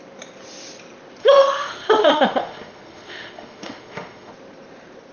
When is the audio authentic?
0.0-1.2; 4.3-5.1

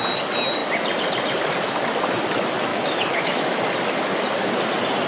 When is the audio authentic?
0.0-2.7; 3.6-5.1

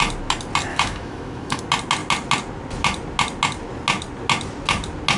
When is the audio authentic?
0.0-0.7; 1.6-5.2

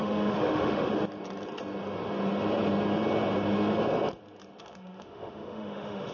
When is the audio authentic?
0.9-4.6

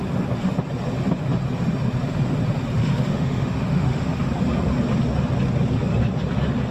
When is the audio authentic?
0.0-2.8; 4.2-6.7

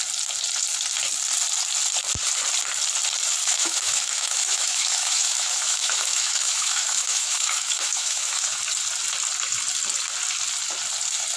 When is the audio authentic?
0.0-3.4; 8.6-11.4

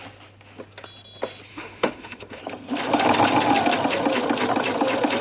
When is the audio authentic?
0.0-1.5; 2.4-5.2